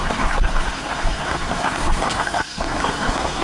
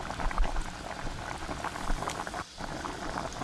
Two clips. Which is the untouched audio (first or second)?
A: second